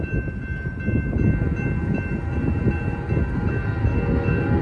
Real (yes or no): yes